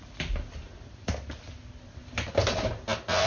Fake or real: real